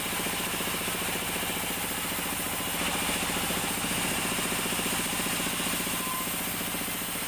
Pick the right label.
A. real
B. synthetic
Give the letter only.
A